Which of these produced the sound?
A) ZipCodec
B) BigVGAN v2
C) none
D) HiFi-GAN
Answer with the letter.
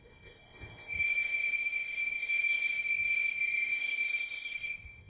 A